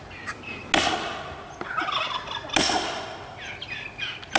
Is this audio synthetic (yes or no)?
no